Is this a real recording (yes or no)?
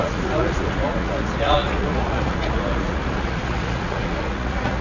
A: no